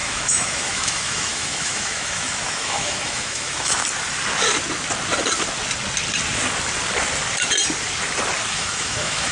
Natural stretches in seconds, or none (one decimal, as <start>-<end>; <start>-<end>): 3.8-8.5